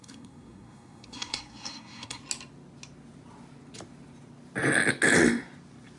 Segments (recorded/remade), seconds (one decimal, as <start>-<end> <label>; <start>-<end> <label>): 0.0-2.2 remade; 2.2-6.0 recorded